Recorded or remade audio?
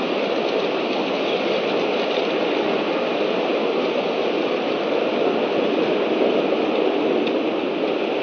recorded